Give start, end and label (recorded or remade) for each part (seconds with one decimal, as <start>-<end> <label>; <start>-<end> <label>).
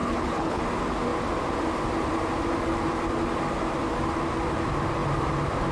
0.0-0.6 remade; 0.6-5.7 recorded